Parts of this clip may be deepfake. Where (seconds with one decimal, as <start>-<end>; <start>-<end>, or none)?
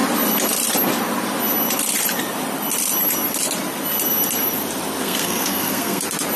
5.0-6.0